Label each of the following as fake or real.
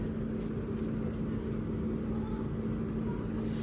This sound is real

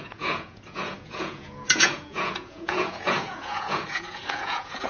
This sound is fake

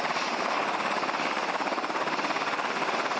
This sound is real